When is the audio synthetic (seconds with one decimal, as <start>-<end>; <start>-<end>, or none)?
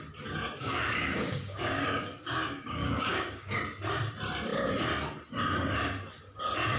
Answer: 0.6-3.6